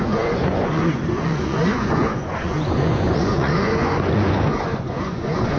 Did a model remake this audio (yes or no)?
yes